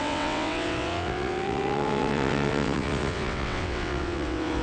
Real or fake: fake